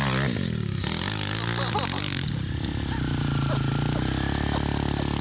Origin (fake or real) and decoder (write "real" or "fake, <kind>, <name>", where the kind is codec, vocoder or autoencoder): real